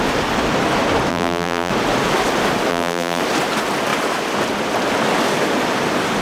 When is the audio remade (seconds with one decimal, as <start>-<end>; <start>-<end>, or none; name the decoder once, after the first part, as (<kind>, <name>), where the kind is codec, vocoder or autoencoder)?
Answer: 1.1-1.7 (vocoder, BigVGAN v2); 2.7-3.2